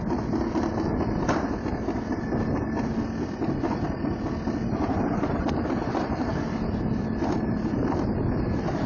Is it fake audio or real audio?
real